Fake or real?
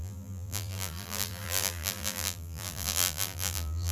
fake